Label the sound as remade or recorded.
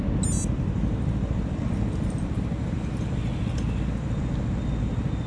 recorded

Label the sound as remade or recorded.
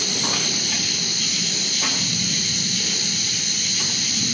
recorded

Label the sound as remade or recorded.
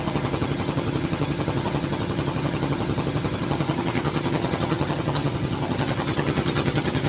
remade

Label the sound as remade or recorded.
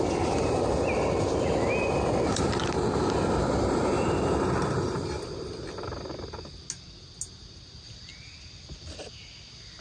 recorded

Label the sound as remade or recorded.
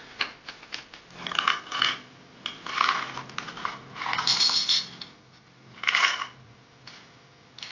recorded